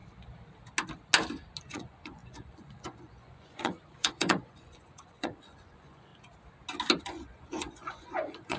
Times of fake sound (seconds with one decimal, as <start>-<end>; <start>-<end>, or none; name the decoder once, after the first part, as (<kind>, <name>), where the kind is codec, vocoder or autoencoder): 1.6-6.1 (vocoder, Vocos); 7.0-8.6